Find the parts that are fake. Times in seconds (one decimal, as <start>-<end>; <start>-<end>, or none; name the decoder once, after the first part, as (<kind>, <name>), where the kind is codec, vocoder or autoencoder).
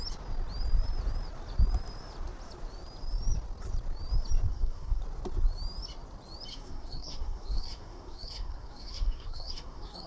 4.5-5.0 (codec, SNAC); 6.5-10.1